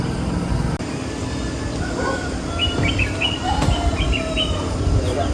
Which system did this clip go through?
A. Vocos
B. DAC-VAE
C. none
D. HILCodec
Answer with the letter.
C